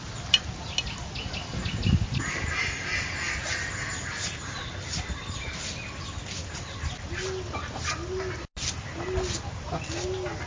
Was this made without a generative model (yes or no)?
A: yes